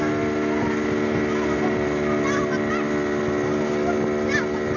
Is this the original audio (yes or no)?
yes